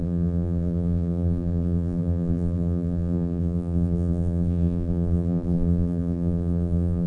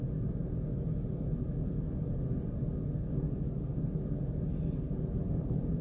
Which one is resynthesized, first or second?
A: first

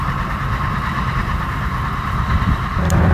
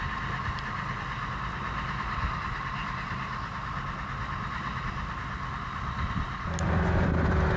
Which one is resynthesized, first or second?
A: first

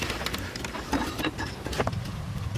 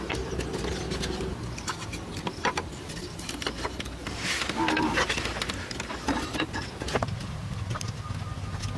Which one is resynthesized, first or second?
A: first